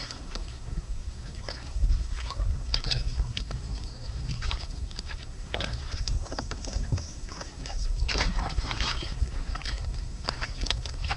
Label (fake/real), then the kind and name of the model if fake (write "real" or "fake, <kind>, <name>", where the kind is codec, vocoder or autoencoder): fake, codec, SNAC